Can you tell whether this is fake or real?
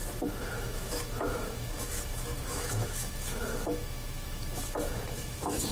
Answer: fake